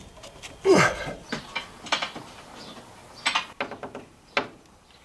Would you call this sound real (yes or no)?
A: yes